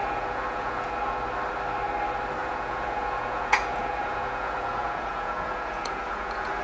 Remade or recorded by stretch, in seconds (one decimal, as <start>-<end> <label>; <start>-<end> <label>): 0.0-0.9 remade; 0.9-2.4 recorded; 2.4-6.6 remade